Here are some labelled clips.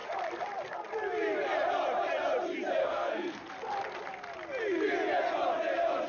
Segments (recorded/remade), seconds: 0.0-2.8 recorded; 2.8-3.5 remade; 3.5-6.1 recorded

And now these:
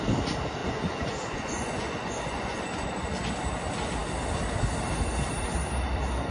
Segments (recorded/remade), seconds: 0.0-0.6 recorded; 0.6-3.4 remade; 3.4-6.3 recorded

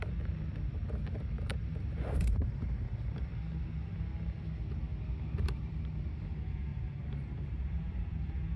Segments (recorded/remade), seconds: 0.0-3.3 remade; 3.3-5.6 recorded; 5.6-8.6 remade